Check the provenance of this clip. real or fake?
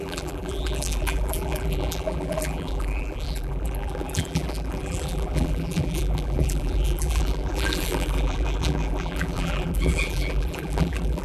fake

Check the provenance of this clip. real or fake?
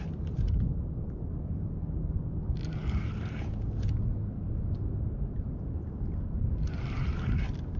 real